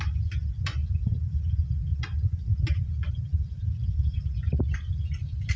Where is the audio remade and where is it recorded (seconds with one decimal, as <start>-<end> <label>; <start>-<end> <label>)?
0.0-1.9 recorded; 1.9-5.6 remade